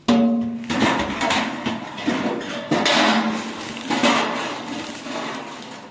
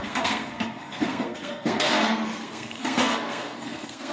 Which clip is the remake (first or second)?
second